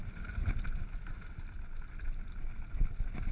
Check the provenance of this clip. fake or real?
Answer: real